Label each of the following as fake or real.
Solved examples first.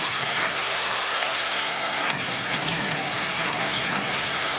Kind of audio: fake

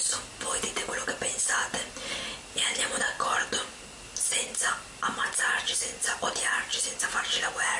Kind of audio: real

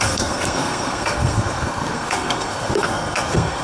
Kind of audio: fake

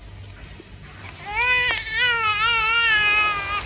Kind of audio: real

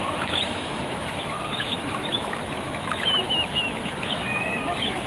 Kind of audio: fake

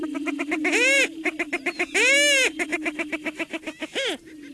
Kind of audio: real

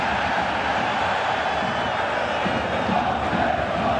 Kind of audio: real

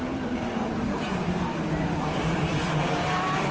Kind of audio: fake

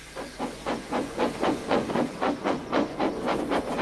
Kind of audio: fake